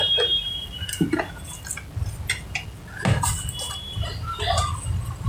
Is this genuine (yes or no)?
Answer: yes